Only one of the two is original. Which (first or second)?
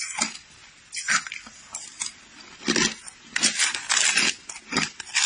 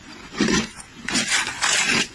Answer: first